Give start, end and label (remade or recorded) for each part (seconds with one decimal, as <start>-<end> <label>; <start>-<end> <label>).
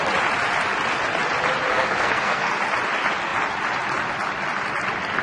0.0-1.7 recorded; 1.7-2.5 remade; 2.5-5.2 recorded